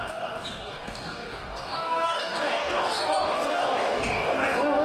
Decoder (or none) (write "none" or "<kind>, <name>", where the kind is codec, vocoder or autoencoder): codec, DAC